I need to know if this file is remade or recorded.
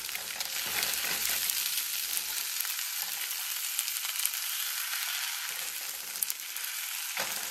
recorded